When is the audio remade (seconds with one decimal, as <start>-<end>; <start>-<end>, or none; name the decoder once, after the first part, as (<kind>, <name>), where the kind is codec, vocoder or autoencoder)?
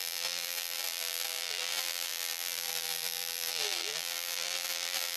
0.0-5.2 (vocoder, BigVGAN v2)